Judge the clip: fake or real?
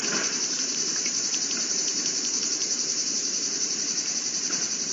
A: fake